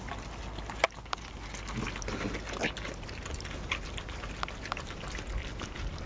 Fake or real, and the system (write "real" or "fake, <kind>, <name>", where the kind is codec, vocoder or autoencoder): real